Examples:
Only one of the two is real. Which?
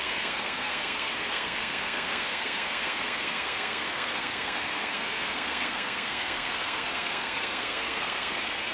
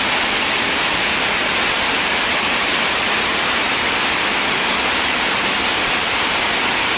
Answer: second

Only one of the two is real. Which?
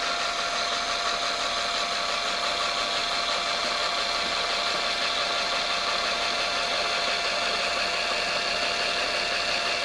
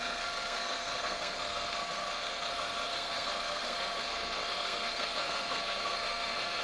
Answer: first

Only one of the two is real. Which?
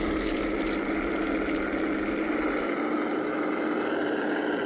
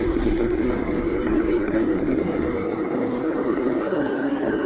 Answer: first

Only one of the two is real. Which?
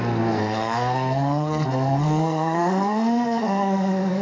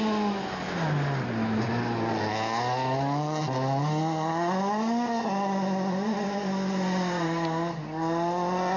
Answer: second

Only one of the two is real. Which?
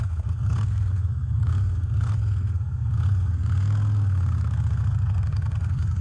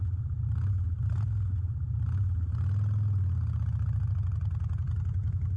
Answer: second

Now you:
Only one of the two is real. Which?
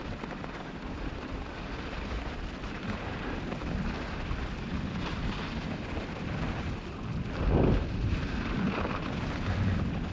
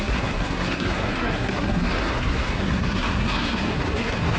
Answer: first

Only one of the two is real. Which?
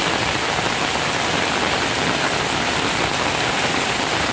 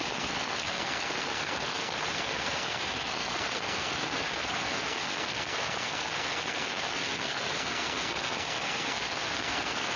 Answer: first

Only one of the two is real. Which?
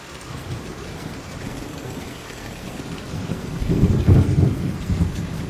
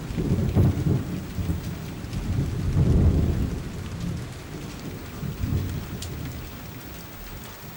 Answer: second